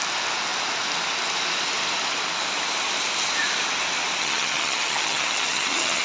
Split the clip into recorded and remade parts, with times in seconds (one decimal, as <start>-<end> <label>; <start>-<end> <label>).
0.0-4.2 recorded; 4.2-6.0 remade